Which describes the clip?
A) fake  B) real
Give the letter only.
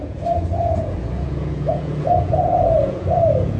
A